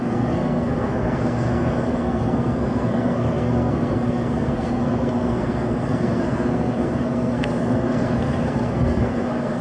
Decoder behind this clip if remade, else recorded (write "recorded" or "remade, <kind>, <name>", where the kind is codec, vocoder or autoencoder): remade, codec, SNAC